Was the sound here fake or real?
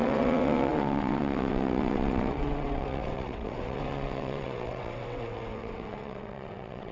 fake